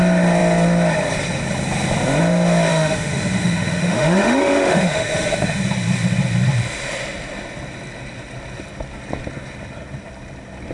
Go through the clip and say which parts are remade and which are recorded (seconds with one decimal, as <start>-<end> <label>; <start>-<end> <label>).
0.0-2.7 recorded; 2.7-5.6 remade; 5.6-10.7 recorded